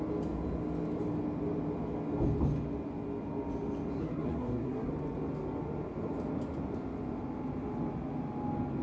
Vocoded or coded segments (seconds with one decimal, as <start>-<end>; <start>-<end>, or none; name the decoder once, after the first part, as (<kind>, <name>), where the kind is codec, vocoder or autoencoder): 4.0-4.9 (codec, SNAC)